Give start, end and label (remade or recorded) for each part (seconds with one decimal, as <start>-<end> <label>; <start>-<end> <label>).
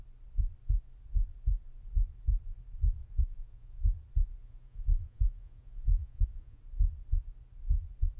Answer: 0.0-3.0 recorded; 3.0-3.8 remade; 3.8-4.4 recorded; 4.4-6.6 remade; 6.6-8.2 recorded